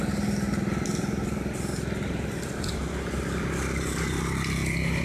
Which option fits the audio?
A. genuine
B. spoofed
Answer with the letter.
A